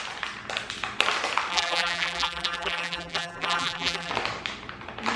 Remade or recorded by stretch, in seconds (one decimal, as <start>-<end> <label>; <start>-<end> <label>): 0.0-1.5 recorded; 1.5-4.1 remade; 4.1-5.2 recorded